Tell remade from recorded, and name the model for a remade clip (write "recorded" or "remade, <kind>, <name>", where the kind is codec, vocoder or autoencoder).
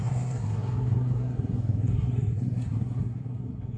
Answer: remade, codec, SNAC